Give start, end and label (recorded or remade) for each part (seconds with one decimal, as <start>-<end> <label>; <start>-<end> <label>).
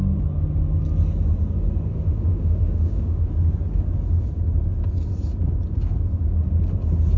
0.0-1.9 recorded; 1.9-3.3 remade; 3.3-7.2 recorded